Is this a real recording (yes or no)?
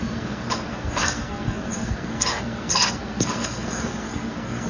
no